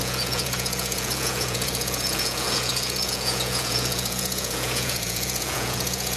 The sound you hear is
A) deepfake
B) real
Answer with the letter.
A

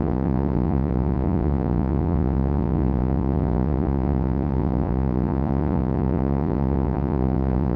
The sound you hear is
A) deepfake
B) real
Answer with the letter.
A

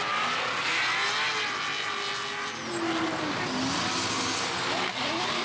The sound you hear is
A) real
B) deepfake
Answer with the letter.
A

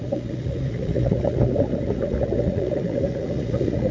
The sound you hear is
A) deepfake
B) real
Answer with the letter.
A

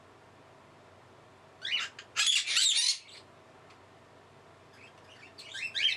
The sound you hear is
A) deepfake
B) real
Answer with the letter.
B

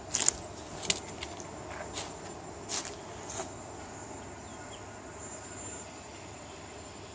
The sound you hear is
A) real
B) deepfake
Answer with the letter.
A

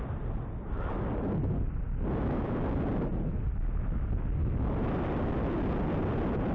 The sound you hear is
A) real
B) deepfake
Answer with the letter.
A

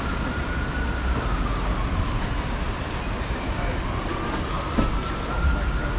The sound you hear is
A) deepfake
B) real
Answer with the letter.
B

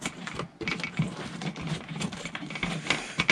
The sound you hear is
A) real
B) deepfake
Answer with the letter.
A